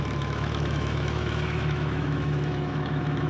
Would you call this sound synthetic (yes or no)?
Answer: yes